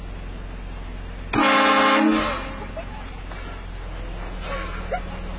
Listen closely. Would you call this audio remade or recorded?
recorded